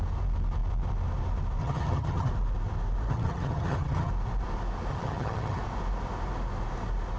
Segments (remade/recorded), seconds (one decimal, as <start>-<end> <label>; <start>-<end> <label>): 0.0-1.6 recorded; 1.6-2.3 remade; 2.3-3.1 recorded; 3.1-4.1 remade; 4.1-4.9 recorded; 4.9-5.6 remade; 5.6-7.2 recorded